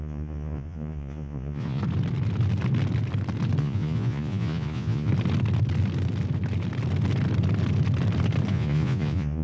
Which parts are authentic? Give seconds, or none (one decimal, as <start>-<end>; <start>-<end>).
1.8-3.6; 5.1-8.5